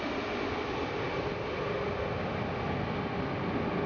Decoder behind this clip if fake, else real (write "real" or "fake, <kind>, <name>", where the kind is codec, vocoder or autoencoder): real